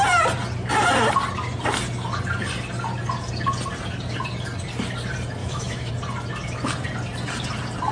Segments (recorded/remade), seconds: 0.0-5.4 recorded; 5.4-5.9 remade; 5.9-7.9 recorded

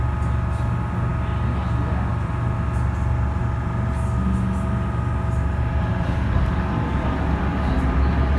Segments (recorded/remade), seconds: 0.0-8.4 recorded

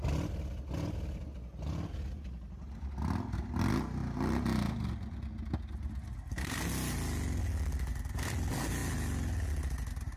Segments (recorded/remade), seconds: 0.0-10.2 recorded

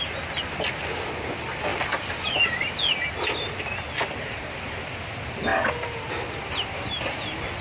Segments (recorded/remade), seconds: 0.0-7.6 recorded